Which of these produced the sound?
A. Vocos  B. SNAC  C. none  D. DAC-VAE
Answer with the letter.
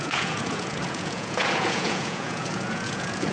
A